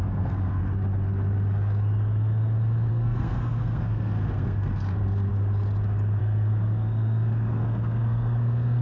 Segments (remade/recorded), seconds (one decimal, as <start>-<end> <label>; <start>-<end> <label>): 0.0-0.6 remade; 0.6-2.9 recorded; 2.9-5.3 remade; 5.3-6.2 recorded; 6.2-8.8 remade